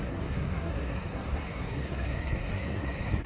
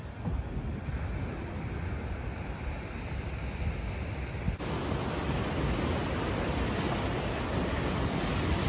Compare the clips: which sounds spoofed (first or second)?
first